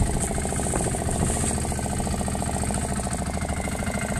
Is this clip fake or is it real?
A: real